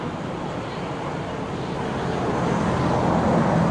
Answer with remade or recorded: recorded